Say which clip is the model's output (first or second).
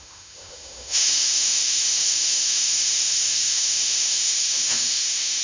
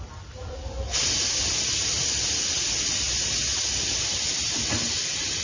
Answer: first